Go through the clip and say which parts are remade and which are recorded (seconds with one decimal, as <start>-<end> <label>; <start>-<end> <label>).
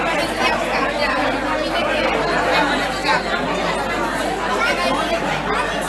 0.0-5.9 recorded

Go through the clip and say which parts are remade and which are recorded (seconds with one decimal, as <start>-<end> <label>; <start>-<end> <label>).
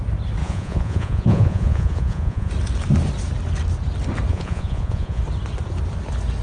0.0-0.4 recorded; 0.4-2.5 remade; 2.5-4.3 recorded; 4.3-5.2 remade; 5.2-6.4 recorded